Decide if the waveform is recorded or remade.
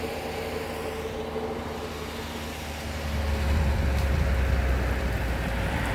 remade